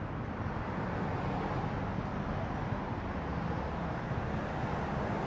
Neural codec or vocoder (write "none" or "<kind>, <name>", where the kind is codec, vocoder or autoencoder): none